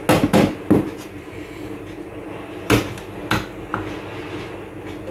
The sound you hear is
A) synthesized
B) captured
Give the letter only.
B